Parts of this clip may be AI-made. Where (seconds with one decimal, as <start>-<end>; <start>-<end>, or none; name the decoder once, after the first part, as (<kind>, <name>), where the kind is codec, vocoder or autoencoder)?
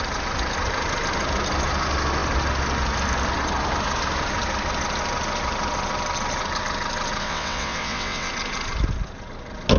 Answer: 7.2-8.3 (vocoder, WaveNeXt)